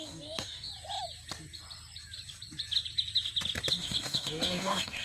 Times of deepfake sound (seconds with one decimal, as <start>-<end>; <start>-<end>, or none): 0.0-0.7; 3.7-5.0